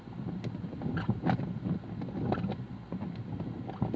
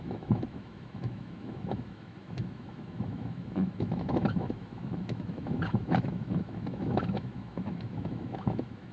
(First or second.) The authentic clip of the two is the first